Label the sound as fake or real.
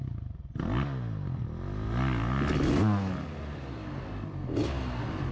real